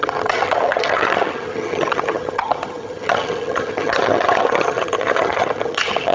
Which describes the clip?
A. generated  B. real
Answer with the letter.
A